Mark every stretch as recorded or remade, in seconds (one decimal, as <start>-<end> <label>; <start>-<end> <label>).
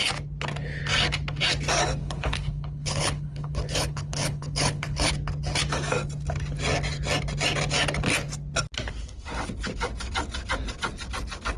0.0-2.0 recorded; 2.0-5.1 remade; 5.1-11.6 recorded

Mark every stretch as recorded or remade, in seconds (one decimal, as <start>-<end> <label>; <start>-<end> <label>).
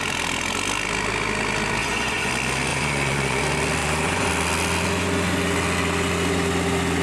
0.0-1.8 recorded; 1.8-2.3 remade; 2.3-2.7 recorded; 2.7-3.4 remade; 3.4-3.8 recorded; 3.8-4.3 remade; 4.3-7.0 recorded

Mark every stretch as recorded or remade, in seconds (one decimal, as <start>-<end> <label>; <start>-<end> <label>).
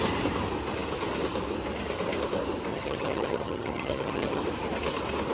0.0-2.7 recorded; 2.7-4.4 remade; 4.4-5.3 recorded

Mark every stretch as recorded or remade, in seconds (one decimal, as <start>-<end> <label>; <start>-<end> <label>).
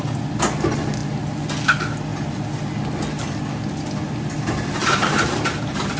0.0-4.8 recorded; 4.8-6.0 remade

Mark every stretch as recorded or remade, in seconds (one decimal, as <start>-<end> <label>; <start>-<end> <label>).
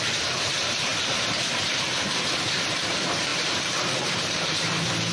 0.0-0.9 remade; 0.9-1.7 recorded; 1.7-5.1 remade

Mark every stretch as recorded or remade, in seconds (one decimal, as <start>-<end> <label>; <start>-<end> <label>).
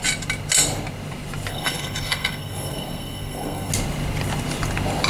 0.0-1.5 recorded; 1.5-3.7 remade; 3.7-5.1 recorded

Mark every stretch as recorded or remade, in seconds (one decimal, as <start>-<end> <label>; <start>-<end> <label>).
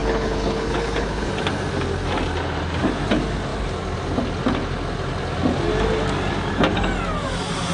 0.0-1.3 remade; 1.3-7.7 recorded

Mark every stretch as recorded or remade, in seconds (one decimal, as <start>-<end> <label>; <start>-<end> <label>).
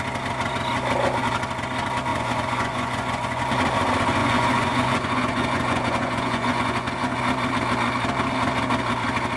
0.0-2.1 recorded; 2.1-3.4 remade; 3.4-4.2 recorded; 4.2-7.2 remade; 7.2-9.4 recorded